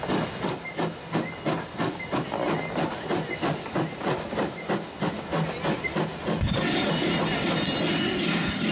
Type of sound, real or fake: real